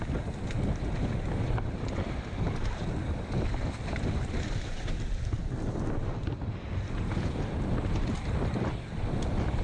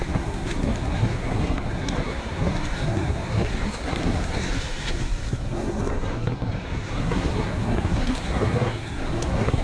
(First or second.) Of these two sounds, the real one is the first